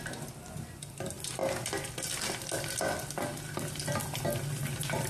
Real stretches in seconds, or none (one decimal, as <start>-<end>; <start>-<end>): 0.0-5.1